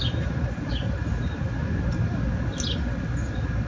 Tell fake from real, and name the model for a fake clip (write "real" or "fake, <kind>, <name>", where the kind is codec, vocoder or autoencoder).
real